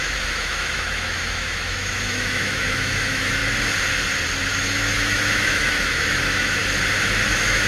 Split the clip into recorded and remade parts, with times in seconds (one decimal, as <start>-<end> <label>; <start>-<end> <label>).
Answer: 0.0-3.4 remade; 3.4-4.5 recorded; 4.5-6.6 remade; 6.6-7.3 recorded; 7.3-7.7 remade